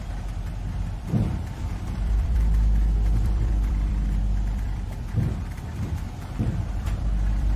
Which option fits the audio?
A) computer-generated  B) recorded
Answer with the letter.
A